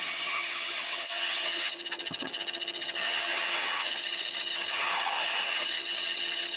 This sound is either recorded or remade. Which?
remade